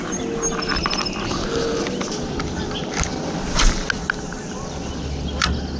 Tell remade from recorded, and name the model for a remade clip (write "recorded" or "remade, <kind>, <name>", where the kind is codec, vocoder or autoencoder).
recorded